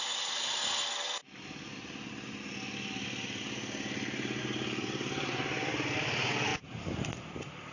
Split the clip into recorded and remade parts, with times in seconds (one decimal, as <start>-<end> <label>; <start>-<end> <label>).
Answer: 0.0-0.6 remade; 0.6-4.4 recorded; 4.4-6.5 remade; 6.5-7.0 recorded; 7.0-7.7 remade